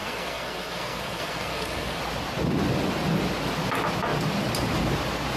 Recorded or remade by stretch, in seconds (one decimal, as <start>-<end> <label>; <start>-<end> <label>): 0.0-2.0 remade; 2.0-5.4 recorded